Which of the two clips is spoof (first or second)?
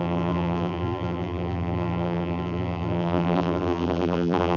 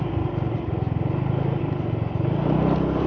first